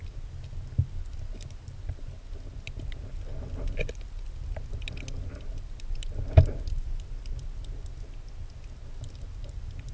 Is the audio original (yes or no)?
yes